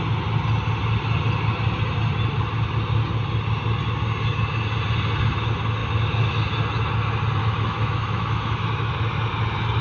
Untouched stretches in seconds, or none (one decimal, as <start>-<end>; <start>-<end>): 0.0-7.4; 8.9-9.8